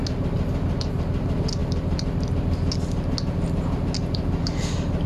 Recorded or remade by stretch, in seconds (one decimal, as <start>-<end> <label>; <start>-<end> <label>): 0.0-5.1 recorded